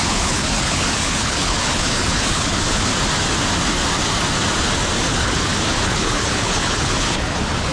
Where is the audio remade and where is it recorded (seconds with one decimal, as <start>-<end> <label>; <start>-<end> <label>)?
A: 0.0-2.9 remade; 2.9-5.1 recorded; 5.1-7.7 remade

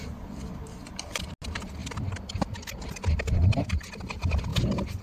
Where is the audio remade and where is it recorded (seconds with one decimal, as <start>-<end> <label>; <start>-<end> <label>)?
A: 0.0-5.0 recorded

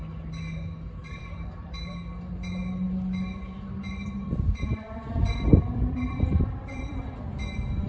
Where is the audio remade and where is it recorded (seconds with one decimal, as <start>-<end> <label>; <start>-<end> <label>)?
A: 0.0-1.0 recorded; 1.0-1.9 remade; 1.9-3.9 recorded; 3.9-7.0 remade; 7.0-7.9 recorded